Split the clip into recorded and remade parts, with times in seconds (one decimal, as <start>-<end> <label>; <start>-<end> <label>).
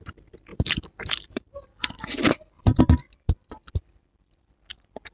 0.0-0.5 recorded; 0.5-2.8 remade; 2.8-5.1 recorded